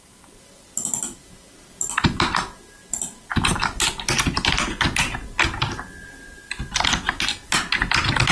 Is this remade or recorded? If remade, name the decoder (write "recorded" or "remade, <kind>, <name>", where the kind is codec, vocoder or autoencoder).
recorded